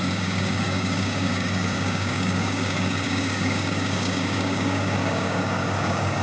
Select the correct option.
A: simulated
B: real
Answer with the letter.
A